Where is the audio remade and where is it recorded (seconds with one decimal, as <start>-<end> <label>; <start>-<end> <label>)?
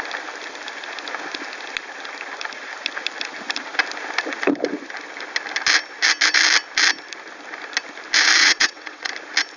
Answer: 0.0-8.4 recorded; 8.4-9.1 remade; 9.1-9.6 recorded